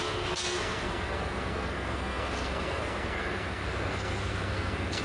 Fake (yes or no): yes